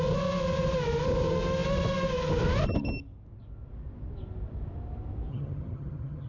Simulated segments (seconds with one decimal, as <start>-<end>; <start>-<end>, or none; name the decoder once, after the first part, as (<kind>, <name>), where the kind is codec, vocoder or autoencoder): 5.3-6.3 (vocoder, HiFi-GAN)